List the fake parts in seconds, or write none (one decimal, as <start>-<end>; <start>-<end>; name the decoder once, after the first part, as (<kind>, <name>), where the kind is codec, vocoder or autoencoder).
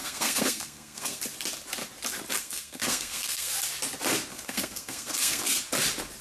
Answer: 0.0-1.2 (codec, SNAC); 2.4-3.5; 4.3-5.6